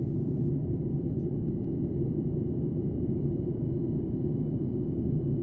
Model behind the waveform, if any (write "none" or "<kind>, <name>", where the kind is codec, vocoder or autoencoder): none